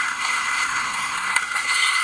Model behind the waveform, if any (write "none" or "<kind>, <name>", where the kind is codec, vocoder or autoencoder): codec, SNAC